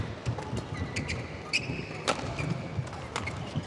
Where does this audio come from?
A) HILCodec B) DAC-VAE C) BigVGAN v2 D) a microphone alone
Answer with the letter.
D